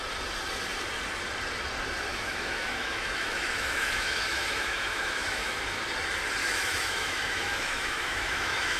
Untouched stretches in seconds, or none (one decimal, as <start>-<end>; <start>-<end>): 0.0-2.1; 5.8-6.4